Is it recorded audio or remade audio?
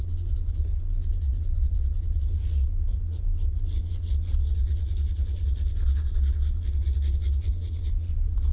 remade